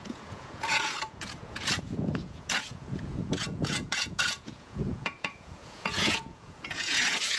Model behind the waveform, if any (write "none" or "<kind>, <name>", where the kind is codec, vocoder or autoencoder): vocoder, Vocos